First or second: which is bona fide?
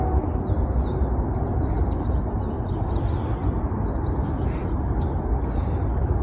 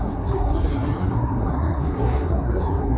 first